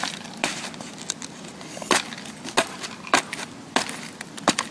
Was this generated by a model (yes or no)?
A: no